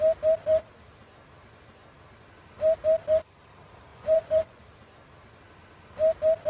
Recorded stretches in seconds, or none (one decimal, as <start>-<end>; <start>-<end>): 0.0-3.9; 4.6-6.5